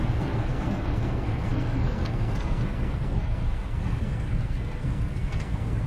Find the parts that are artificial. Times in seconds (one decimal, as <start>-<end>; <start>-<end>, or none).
0.0-5.9